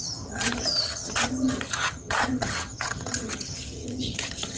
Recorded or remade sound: remade